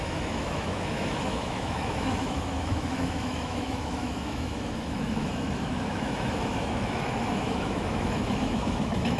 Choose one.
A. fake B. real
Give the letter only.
A